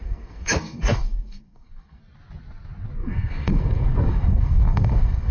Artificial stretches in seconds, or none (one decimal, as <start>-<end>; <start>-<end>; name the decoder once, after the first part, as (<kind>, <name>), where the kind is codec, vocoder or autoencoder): 0.0-2.0 (codec, SNAC); 3.0-5.3